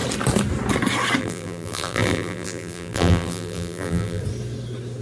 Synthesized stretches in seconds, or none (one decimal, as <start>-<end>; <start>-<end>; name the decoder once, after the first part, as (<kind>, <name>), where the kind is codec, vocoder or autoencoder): 1.2-4.2 (vocoder, BigVGAN v2)